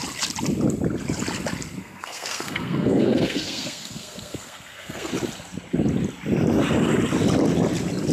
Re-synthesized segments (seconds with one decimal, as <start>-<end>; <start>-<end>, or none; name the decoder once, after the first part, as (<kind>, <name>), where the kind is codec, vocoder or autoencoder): 1.8-5.1 (codec, SNAC)